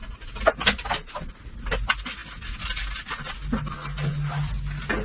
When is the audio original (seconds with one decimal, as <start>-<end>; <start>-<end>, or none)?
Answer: 0.0-5.0